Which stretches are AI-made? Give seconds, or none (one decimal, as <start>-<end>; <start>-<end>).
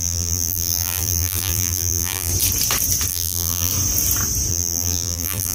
0.0-2.3; 3.1-3.7; 4.5-5.5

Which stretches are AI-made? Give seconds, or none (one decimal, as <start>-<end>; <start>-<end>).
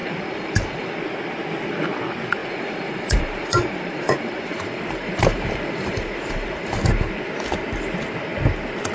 0.0-0.9; 2.4-7.1